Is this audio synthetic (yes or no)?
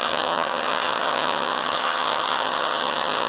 yes